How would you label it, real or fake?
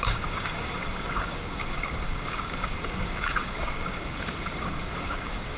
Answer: fake